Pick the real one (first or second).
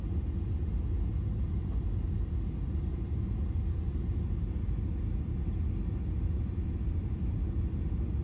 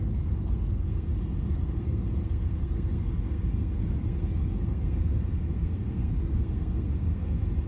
first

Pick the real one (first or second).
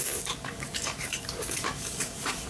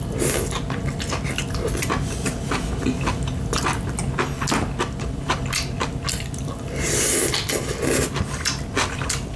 second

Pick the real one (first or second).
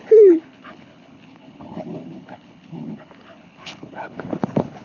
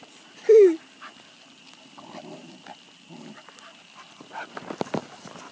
second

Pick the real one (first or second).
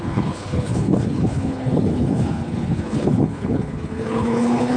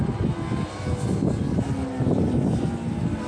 second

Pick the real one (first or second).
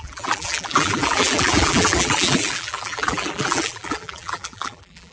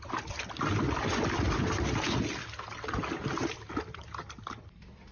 second